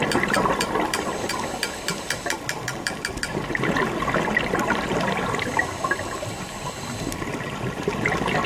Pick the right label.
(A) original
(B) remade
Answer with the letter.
B